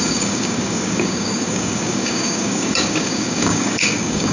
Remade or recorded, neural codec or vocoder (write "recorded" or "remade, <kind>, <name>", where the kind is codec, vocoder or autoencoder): remade, codec, DAC